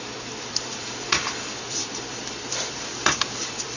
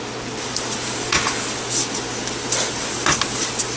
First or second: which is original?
second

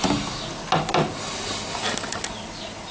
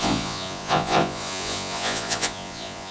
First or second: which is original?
first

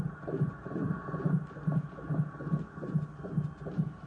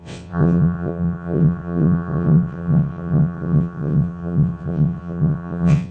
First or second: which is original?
first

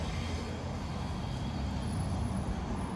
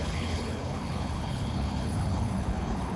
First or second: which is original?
first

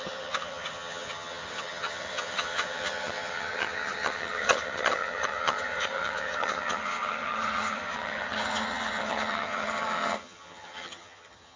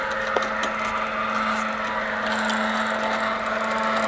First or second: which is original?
second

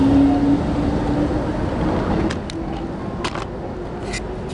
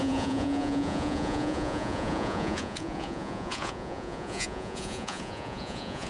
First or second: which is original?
first